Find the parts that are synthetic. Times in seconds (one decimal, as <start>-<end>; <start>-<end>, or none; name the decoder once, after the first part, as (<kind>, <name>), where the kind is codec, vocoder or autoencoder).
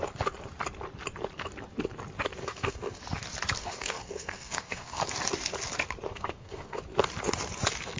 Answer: 2.4-3.0 (codec, SNAC); 3.6-5.0; 6.1-6.8